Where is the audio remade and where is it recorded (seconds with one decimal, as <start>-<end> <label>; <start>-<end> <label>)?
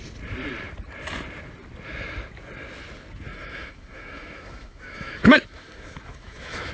0.0-3.3 recorded; 3.3-6.7 remade